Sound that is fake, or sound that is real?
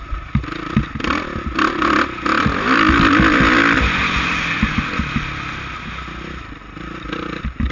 real